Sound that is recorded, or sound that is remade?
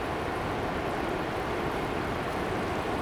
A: remade